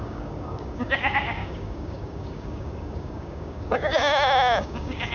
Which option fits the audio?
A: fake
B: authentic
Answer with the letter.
A